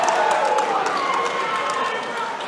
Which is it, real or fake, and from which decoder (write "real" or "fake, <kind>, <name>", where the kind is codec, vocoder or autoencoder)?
real